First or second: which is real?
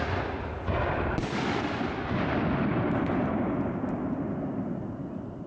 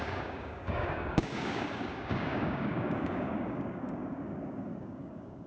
first